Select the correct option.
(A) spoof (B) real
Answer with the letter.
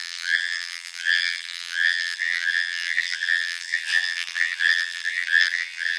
A